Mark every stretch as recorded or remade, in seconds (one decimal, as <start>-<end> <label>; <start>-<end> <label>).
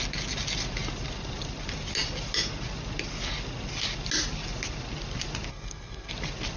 0.0-5.5 recorded; 5.5-6.1 remade; 6.1-6.6 recorded